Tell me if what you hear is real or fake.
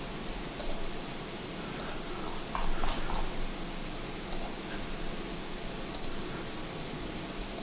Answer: real